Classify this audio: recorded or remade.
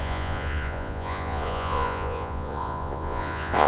remade